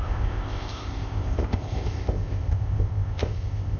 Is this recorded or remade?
remade